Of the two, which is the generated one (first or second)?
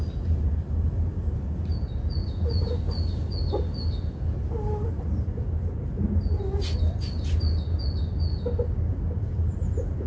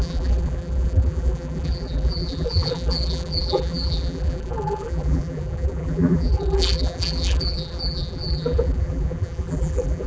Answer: second